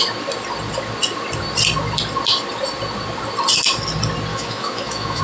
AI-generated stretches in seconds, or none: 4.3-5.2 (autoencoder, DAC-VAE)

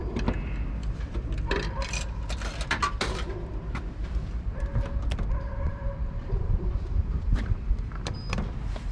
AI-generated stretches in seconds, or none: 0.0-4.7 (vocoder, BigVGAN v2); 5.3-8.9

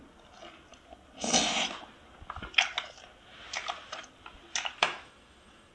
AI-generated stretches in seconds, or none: 4.8-5.7 (autoencoder, DAC-VAE)

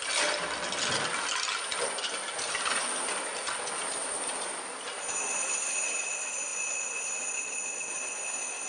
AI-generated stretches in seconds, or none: none

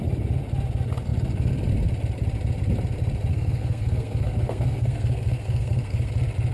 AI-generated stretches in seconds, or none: 3.3-6.1 (codec, SNAC)

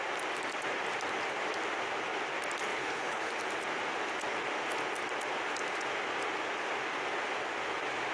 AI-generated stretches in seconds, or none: 2.7-3.3 (codec, HILCodec)